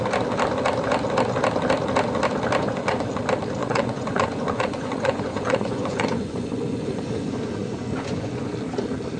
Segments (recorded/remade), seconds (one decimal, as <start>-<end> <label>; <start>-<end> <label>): 0.0-2.6 recorded; 2.6-3.1 remade; 3.1-3.6 recorded; 3.6-8.5 remade; 8.5-9.2 recorded